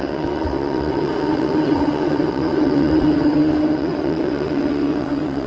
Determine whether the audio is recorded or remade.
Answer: remade